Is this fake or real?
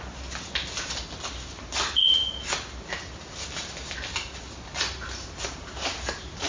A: real